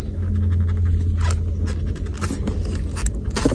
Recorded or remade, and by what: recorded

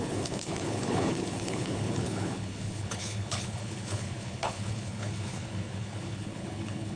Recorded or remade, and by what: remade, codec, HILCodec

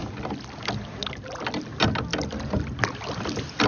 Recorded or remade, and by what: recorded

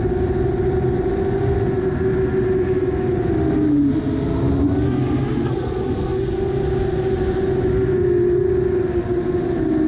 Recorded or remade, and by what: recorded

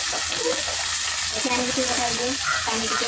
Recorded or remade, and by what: recorded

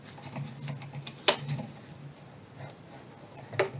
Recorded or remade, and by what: recorded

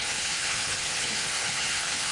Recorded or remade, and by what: remade, codec, HILCodec